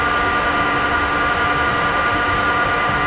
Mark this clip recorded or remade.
remade